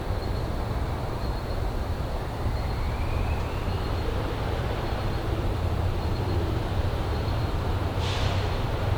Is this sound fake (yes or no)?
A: yes